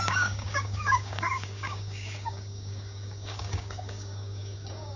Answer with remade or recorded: remade